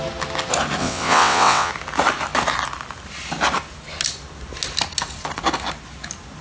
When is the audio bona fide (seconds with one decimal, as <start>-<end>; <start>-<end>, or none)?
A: 0.0-0.8; 1.7-6.4